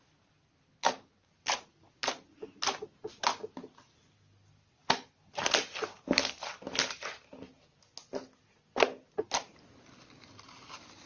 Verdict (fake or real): real